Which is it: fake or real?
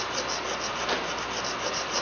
real